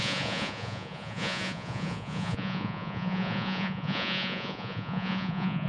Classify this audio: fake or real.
fake